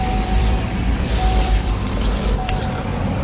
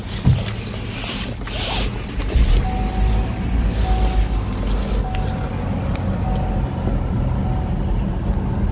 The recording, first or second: second